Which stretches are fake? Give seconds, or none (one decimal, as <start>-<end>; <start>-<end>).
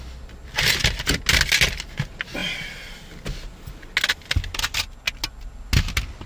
none